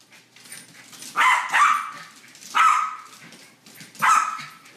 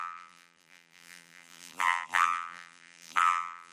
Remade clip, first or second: second